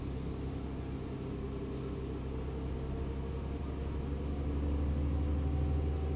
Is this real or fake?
real